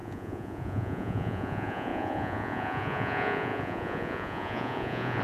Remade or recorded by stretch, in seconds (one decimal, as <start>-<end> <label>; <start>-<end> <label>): 0.0-5.2 remade